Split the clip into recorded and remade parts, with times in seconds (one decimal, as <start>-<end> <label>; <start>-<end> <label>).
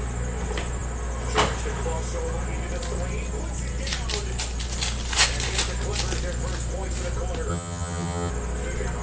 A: 0.0-7.5 recorded; 7.5-8.3 remade; 8.3-9.0 recorded